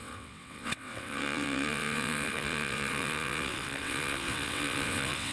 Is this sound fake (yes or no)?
yes